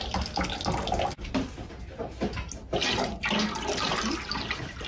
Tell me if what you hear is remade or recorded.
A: recorded